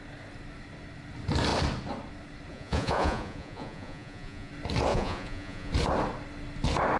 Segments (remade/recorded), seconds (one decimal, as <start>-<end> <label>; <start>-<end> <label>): 0.0-2.5 recorded; 2.5-4.5 remade; 4.5-4.9 recorded; 4.9-5.7 remade; 5.7-7.0 recorded